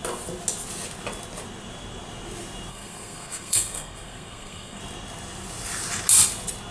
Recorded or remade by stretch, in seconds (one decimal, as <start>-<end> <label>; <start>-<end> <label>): 0.0-2.7 recorded; 2.7-4.8 remade; 4.8-6.7 recorded